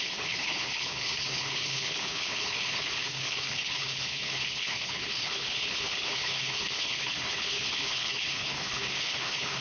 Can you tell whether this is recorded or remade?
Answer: remade